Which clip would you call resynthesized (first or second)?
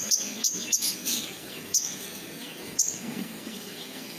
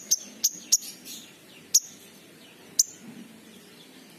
first